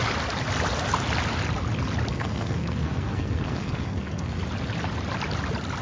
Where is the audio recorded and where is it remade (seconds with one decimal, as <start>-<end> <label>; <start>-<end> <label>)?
0.0-2.1 recorded; 2.1-4.4 remade; 4.4-5.8 recorded